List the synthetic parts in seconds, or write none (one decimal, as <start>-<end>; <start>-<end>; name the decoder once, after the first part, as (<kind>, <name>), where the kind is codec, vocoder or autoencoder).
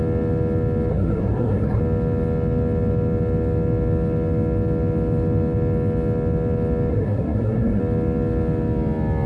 0.9-1.8 (codec, SNAC); 6.9-7.8